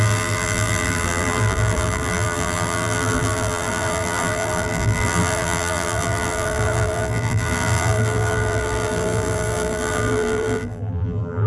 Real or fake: fake